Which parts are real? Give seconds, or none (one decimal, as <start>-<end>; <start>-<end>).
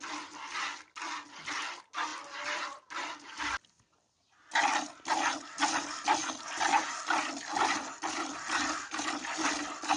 0.0-10.0